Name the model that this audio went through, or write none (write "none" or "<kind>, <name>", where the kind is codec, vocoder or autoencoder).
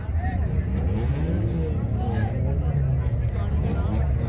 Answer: none